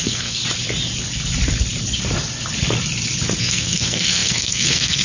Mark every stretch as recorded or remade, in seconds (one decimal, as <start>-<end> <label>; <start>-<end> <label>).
0.0-0.4 remade; 0.4-3.4 recorded; 3.4-5.0 remade